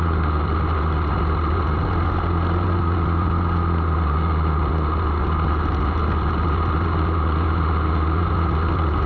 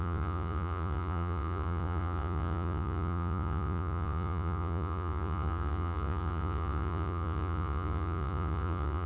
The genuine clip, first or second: first